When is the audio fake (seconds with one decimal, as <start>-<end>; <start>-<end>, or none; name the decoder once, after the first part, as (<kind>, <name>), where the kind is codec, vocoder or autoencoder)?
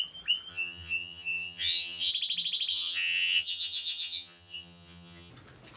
0.5-2.1 (vocoder, HiFi-GAN); 2.7-5.3